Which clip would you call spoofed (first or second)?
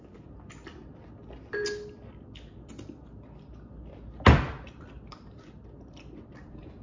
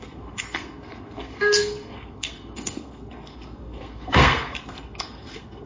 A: second